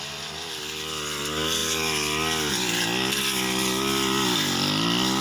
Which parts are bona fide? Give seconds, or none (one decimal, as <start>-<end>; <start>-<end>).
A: 0.0-5.2